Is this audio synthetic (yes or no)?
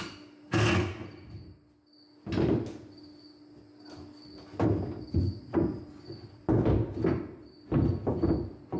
no